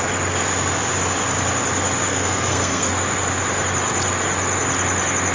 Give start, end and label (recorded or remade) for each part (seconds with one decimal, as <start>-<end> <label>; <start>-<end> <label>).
0.0-2.1 recorded; 2.1-2.9 remade; 2.9-5.3 recorded